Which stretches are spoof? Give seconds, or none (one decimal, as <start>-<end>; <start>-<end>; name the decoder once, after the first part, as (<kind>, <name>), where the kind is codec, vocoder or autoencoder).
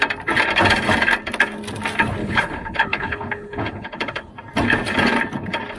2.2-4.3 (codec, HILCodec)